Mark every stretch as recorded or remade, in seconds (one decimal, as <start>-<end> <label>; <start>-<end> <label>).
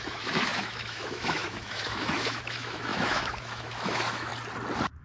0.0-4.3 remade; 4.3-5.0 recorded